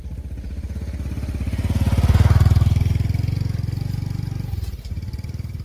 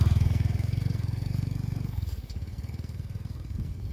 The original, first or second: first